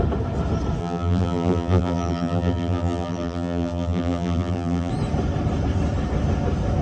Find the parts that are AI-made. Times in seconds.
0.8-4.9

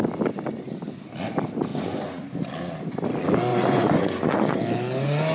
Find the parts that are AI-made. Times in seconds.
1.7-2.2; 3.5-4.6

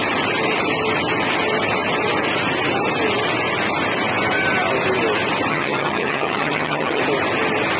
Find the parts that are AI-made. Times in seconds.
5.5-7.0

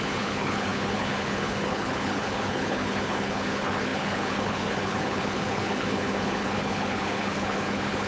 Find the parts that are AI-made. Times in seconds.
0.0-8.1

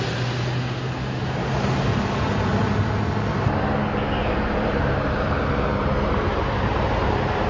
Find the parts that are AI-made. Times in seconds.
4.2-7.5

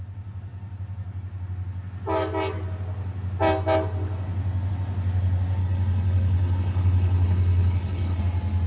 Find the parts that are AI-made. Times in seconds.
5.6-8.2